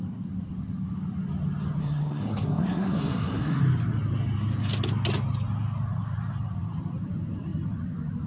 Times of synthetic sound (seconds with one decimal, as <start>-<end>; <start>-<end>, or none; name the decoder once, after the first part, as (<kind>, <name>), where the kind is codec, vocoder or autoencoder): 1.8-3.6 (codec, SNAC)